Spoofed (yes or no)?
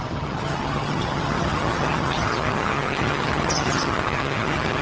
yes